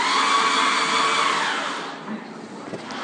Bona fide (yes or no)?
yes